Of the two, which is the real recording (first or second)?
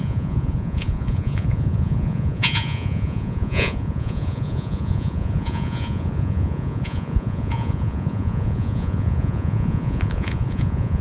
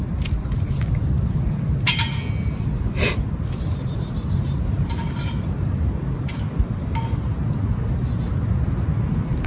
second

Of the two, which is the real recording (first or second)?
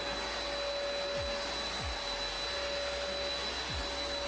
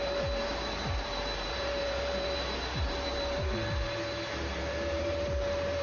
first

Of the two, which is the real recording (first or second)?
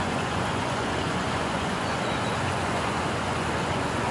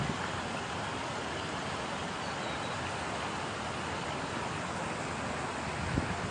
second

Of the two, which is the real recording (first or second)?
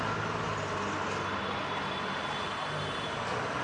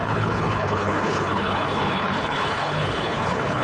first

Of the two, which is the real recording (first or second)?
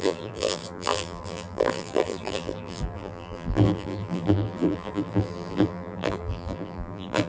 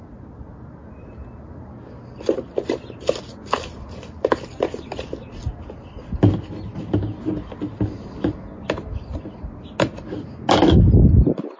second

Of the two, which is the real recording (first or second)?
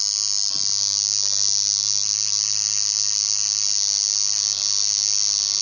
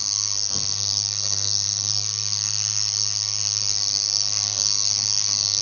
first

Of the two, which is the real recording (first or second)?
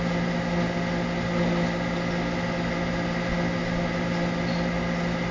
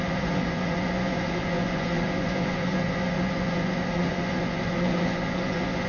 first